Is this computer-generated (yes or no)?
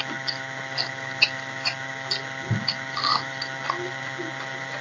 no